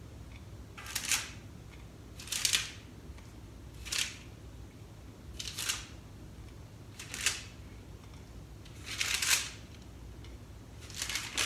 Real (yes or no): yes